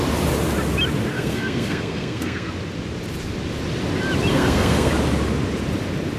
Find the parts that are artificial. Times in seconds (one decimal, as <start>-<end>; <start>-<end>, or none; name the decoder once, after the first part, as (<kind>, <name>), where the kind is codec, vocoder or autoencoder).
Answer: 1.1-2.5 (codec, SNAC); 4.3-4.9

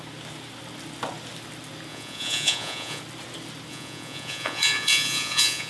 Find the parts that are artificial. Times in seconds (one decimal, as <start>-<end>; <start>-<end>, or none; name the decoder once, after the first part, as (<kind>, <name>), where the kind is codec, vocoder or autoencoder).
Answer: 1.9-3.0 (vocoder, Vocos); 3.7-5.7

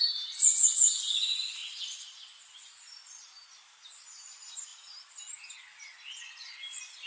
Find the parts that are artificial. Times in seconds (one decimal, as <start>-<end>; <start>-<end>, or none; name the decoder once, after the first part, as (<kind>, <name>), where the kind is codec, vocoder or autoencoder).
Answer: none

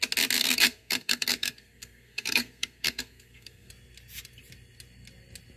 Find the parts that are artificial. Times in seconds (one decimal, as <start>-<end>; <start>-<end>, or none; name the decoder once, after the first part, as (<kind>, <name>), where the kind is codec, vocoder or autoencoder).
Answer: 0.4-3.7 (codec, SNAC)

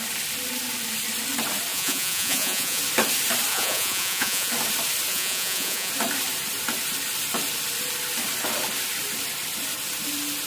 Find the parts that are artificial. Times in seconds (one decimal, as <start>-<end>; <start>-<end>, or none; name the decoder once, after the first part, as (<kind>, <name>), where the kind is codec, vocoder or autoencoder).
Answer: 1.7-2.8 (vocoder, Vocos); 3.5-4.5; 5.1-5.9